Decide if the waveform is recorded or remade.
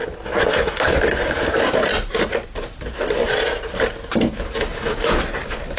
recorded